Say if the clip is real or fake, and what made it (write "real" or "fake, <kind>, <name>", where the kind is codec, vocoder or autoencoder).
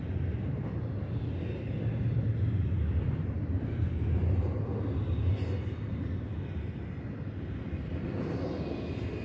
real